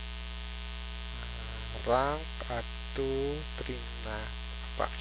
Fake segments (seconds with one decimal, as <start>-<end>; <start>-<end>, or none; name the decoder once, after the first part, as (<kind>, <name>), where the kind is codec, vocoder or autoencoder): none